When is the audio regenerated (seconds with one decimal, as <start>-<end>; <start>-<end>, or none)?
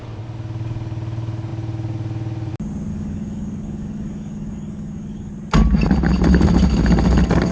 2.9-5.3